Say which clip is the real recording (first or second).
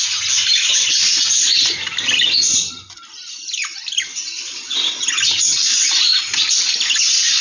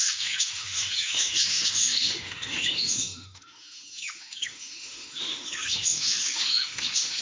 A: first